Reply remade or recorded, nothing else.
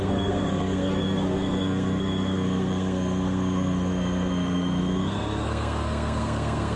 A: remade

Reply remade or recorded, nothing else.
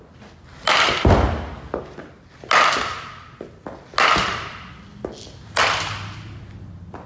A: recorded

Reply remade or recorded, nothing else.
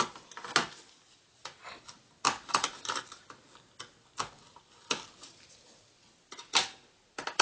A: recorded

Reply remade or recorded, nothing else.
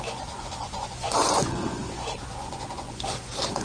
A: remade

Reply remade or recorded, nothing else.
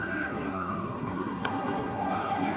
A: remade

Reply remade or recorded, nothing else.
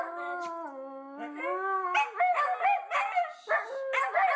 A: recorded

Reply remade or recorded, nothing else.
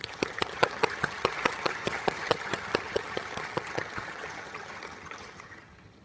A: remade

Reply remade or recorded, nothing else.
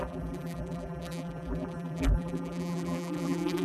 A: remade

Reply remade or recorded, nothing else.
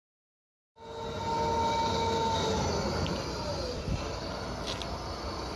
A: recorded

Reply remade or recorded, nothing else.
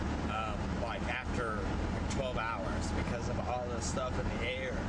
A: recorded